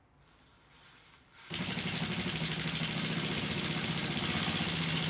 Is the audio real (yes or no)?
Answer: yes